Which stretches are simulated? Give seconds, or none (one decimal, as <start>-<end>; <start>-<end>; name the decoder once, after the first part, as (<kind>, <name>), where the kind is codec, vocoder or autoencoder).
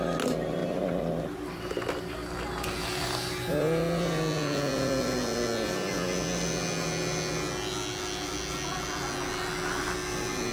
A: none